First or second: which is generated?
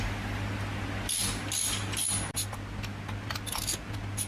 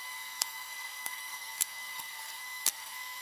second